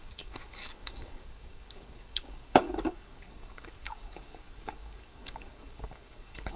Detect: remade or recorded remade